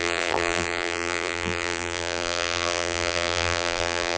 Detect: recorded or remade remade